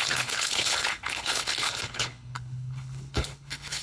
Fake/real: fake